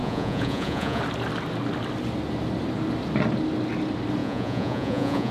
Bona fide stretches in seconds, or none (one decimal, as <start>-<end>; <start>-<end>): 1.0-4.2